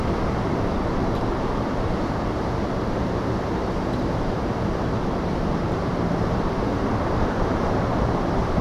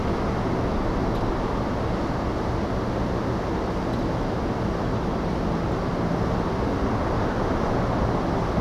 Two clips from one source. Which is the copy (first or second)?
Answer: first